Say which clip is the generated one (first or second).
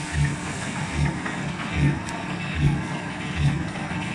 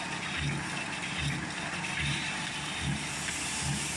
first